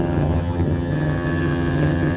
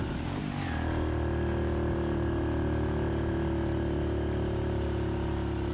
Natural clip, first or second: second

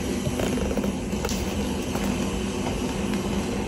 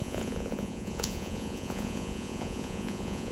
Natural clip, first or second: first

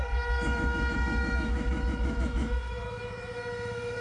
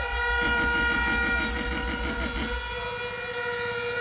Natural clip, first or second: second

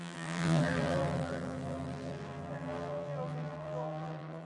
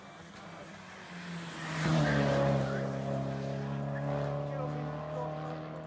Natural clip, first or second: second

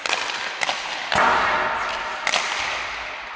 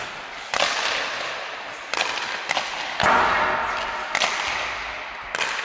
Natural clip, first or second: second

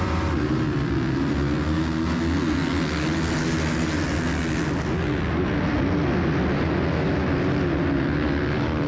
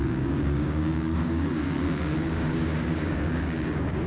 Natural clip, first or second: first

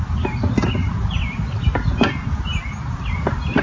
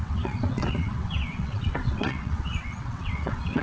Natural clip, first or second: first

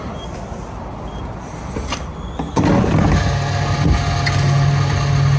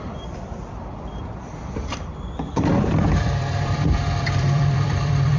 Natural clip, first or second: first